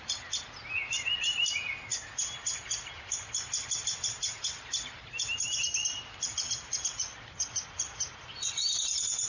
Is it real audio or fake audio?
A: real